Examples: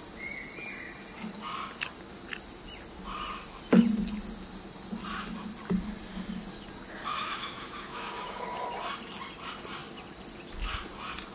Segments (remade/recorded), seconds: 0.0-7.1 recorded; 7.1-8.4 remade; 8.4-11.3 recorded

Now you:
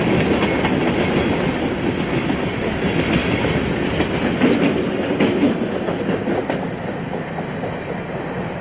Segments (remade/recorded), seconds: 0.0-8.6 recorded